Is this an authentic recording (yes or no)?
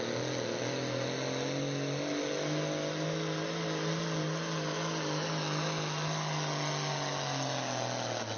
yes